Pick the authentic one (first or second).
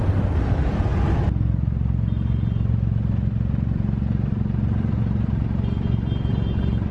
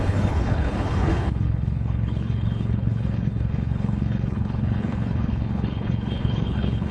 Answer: first